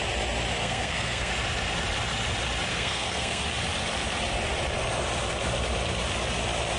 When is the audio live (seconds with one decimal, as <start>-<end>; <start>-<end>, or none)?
0.0-0.6; 1.3-2.7; 3.4-6.8